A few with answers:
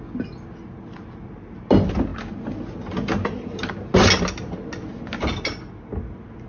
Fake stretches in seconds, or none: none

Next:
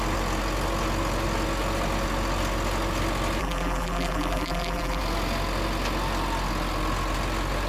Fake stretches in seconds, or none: 3.4-5.0 (vocoder, BigVGAN v2)